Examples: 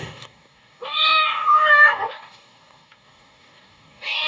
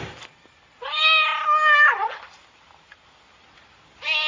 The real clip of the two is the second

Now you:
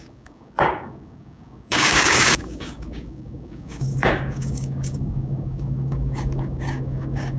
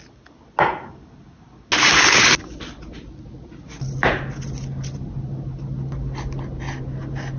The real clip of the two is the second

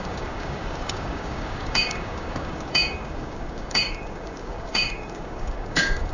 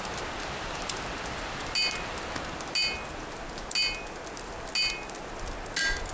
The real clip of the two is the second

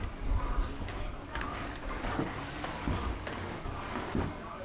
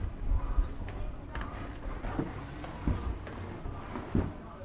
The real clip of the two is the second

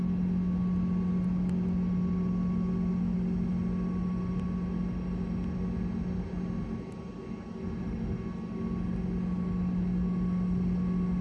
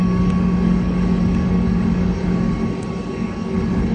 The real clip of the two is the first